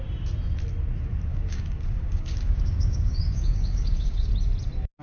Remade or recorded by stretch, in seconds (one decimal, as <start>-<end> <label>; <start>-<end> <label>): 0.0-1.3 recorded; 1.3-4.3 remade; 4.3-5.0 recorded